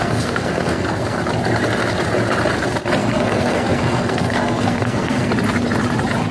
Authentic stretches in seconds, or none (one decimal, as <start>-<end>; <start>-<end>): 1.2-3.0; 5.3-6.3

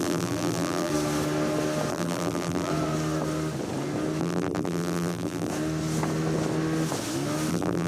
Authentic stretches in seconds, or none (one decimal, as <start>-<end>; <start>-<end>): 0.9-1.9; 2.7-4.2; 5.5-7.5

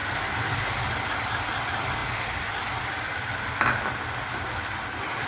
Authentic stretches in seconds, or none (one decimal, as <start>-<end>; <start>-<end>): 0.0-5.3

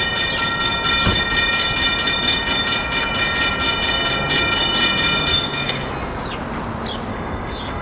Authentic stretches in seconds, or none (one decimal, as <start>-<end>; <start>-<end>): 0.0-5.3; 5.8-7.1

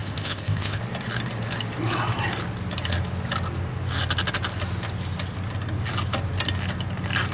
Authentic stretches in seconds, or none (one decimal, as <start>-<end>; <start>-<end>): 0.8-7.3